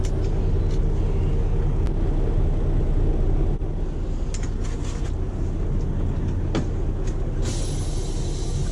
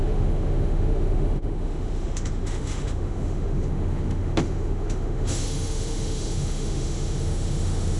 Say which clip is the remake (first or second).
second